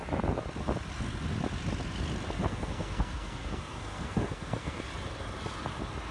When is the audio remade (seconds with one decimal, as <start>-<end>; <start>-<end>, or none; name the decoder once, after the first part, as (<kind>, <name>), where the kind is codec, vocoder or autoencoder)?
2.4-4.8 (codec, SNAC)